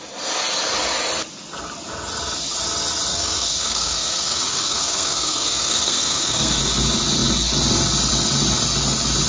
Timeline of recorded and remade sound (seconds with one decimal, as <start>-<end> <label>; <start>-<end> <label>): 0.0-3.1 recorded; 3.1-6.6 remade; 6.6-9.3 recorded